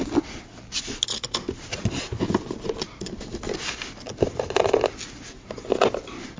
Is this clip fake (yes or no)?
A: no